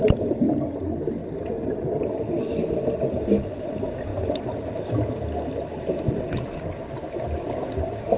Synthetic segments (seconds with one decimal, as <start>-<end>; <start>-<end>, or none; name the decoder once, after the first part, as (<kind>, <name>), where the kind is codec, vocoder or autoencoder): none